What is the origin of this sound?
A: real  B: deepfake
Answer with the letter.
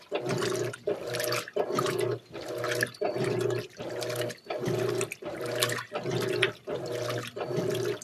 A